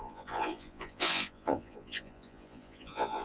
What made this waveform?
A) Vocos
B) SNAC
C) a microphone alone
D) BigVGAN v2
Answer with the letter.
A